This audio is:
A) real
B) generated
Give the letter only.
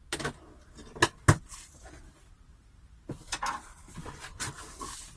A